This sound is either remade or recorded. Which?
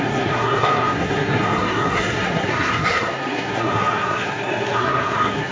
remade